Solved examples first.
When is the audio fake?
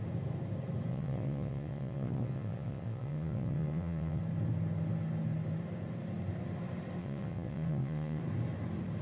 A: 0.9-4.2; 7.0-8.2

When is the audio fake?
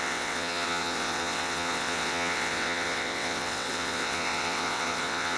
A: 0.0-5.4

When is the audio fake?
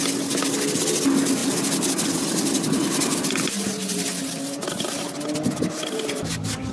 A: none